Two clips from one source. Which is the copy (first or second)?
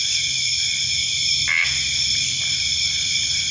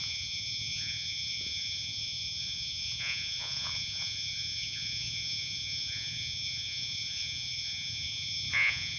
second